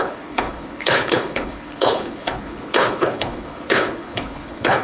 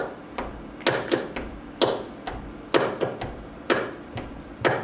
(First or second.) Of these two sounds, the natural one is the second